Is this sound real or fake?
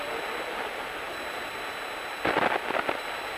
real